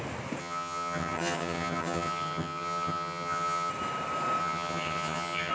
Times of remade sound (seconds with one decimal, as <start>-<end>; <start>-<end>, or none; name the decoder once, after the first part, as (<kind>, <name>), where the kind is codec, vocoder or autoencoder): 0.4-3.7 (vocoder, HiFi-GAN); 4.4-5.5